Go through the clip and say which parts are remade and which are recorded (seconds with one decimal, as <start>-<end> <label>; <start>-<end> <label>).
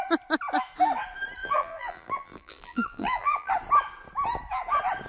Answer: 0.0-1.4 recorded; 1.4-3.5 remade; 3.5-5.1 recorded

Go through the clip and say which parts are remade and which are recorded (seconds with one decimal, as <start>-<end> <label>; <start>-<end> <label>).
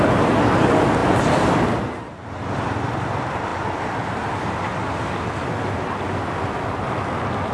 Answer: 0.0-1.0 recorded; 1.0-1.6 remade; 1.6-7.5 recorded